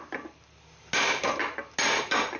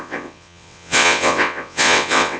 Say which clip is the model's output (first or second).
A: second